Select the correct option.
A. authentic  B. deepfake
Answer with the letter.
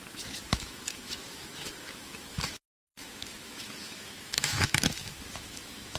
B